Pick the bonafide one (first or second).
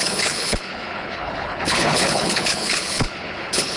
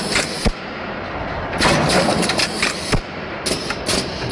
second